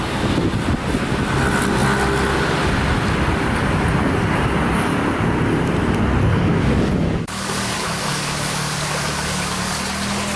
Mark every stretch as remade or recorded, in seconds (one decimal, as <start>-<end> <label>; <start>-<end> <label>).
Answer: 0.0-6.3 recorded; 6.3-9.8 remade; 9.8-10.4 recorded